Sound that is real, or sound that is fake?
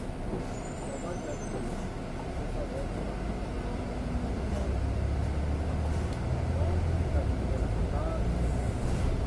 real